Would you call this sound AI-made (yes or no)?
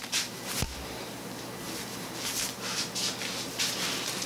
no